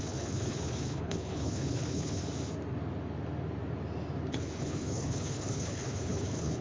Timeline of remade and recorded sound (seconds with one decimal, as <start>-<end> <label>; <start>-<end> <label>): 0.0-2.2 remade; 2.2-4.3 recorded; 4.3-6.6 remade